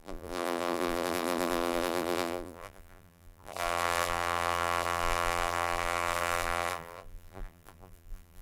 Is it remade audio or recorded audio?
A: remade